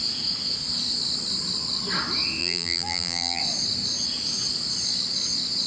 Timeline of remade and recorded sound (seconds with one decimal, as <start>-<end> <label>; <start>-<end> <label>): 0.0-2.4 recorded; 2.4-3.4 remade; 3.4-5.7 recorded